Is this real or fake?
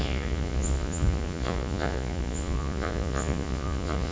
fake